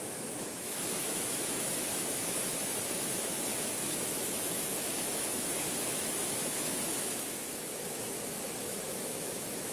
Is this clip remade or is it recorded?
remade